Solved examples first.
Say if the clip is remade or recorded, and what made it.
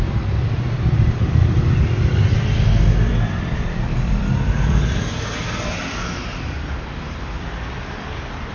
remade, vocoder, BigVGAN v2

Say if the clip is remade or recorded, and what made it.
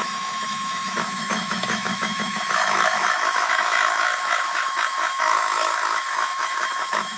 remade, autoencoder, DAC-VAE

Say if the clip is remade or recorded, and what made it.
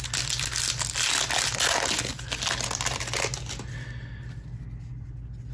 recorded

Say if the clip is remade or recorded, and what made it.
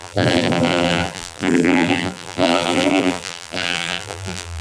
remade, vocoder, BigVGAN v2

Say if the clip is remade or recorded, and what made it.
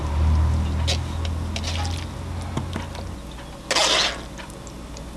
recorded